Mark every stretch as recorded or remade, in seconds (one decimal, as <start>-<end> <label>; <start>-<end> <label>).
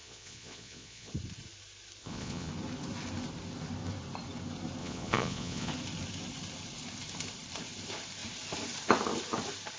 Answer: 0.0-1.1 remade; 1.1-2.0 recorded; 2.0-2.5 remade; 2.5-4.8 recorded; 4.8-5.7 remade; 5.7-9.8 recorded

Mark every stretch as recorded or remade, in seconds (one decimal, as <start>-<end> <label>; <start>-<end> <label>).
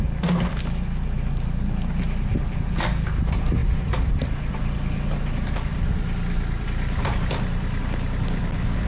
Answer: 0.0-3.6 recorded; 3.6-7.8 remade; 7.8-8.9 recorded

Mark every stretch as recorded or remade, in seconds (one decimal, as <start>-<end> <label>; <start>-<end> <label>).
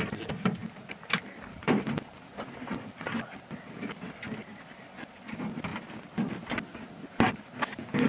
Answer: 0.0-8.1 recorded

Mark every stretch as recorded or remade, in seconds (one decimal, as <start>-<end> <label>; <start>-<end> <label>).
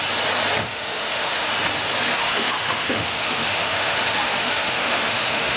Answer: 0.0-0.6 recorded; 0.6-1.5 remade; 1.5-2.1 recorded; 2.1-5.6 remade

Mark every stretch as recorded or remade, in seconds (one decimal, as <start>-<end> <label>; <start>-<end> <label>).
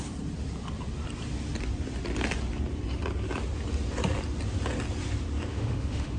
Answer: 0.0-5.5 recorded; 5.5-6.2 remade